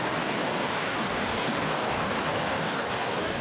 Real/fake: fake